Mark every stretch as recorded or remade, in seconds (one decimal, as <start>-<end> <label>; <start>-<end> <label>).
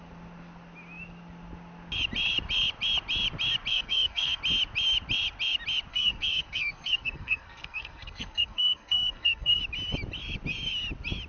0.0-3.7 recorded; 3.7-4.4 remade; 4.4-5.9 recorded; 5.9-9.6 remade; 9.6-11.3 recorded